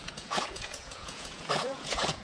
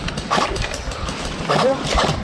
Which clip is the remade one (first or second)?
first